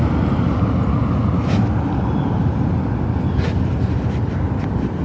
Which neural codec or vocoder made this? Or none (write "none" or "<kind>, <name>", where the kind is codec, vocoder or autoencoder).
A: none